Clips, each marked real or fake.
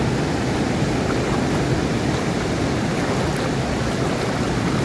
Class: real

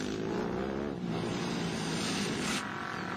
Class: real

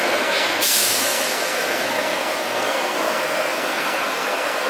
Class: fake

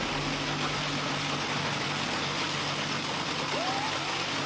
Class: real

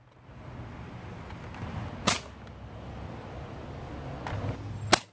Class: real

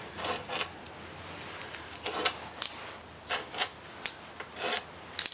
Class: real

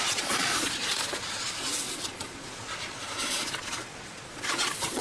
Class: fake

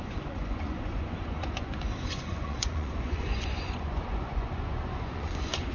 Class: fake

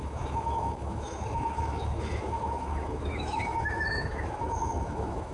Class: fake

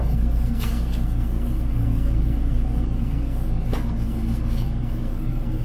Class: fake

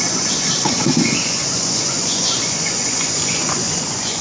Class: fake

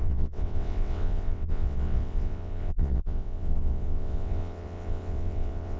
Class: fake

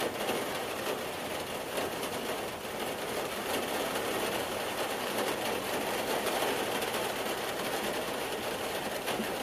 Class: real